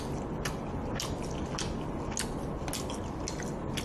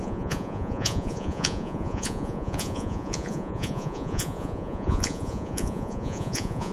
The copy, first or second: second